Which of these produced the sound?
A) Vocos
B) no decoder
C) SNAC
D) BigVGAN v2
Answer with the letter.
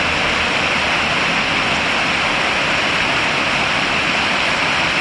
B